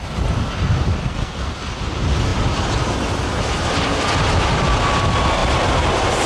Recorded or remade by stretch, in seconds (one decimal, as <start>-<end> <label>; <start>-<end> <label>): 0.0-1.0 recorded; 1.0-1.7 remade; 1.7-6.3 recorded